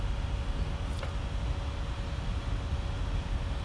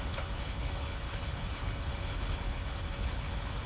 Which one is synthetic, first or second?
second